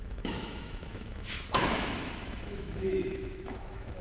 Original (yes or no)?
no